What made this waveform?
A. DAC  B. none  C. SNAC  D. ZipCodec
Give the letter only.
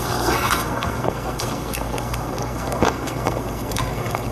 C